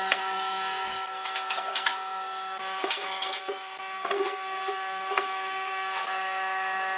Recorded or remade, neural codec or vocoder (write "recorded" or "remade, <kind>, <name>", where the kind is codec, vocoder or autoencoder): remade, codec, SNAC